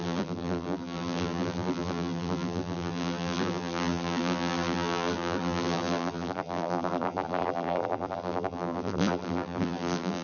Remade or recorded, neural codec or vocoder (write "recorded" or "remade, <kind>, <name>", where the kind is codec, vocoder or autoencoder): remade, vocoder, BigVGAN v2